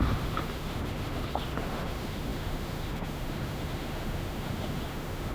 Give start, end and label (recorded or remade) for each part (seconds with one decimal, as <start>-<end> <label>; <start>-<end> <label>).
0.0-5.3 remade